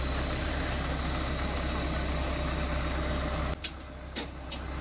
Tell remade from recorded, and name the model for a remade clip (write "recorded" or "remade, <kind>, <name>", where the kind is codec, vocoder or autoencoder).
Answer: recorded